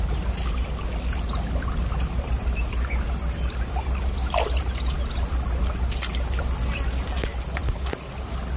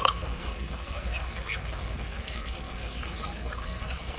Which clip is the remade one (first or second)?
second